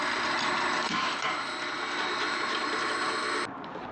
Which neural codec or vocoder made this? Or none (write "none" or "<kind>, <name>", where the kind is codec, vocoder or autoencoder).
vocoder, BigVGAN v2